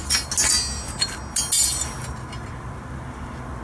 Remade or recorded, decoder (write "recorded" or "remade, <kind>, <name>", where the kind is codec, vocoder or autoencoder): recorded